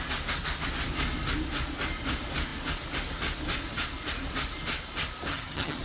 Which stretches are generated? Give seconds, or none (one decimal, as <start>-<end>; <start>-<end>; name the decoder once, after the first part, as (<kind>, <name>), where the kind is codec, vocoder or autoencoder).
5.3-5.8 (vocoder, HiFi-GAN)

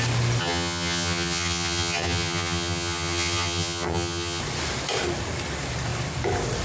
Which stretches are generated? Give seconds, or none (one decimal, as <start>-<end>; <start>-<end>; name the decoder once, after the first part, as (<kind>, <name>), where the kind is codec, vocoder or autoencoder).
0.4-4.4 (vocoder, HiFi-GAN)

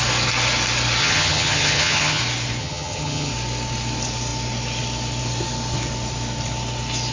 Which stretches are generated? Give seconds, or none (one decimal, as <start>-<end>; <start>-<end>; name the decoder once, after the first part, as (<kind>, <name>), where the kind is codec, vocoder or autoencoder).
1.0-2.2 (vocoder, HiFi-GAN); 2.6-3.3

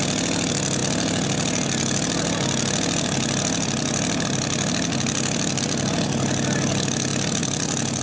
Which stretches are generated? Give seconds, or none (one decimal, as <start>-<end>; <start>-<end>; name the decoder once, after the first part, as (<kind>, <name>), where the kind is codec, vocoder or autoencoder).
none

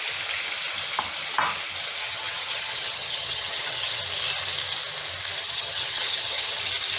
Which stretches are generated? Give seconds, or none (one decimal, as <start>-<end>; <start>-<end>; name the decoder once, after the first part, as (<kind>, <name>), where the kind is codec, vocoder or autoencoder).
2.0-4.0 (vocoder, HiFi-GAN); 5.4-6.6

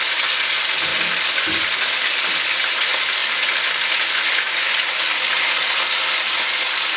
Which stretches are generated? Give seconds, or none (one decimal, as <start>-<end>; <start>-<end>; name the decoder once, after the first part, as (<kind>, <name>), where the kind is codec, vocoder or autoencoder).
none

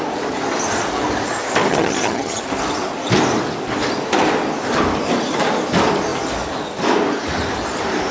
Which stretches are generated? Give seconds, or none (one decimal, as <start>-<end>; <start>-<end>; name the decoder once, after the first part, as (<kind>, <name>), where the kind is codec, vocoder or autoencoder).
1.7-2.4 (vocoder, HiFi-GAN)

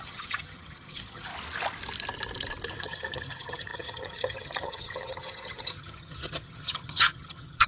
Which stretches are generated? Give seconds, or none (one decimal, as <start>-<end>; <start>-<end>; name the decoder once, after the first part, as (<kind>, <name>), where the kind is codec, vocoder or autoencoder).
0.0-1.3 (vocoder, HiFi-GAN); 2.8-7.7